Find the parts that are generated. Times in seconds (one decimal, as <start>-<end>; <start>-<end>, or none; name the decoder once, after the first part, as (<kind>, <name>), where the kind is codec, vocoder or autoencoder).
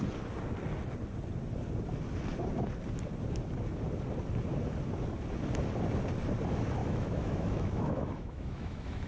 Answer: 6.8-9.1 (autoencoder, DAC-VAE)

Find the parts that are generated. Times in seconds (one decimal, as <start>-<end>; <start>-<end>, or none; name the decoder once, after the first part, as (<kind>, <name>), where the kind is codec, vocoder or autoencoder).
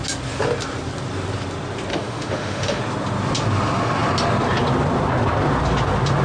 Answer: 1.9-2.8 (autoencoder, DAC-VAE)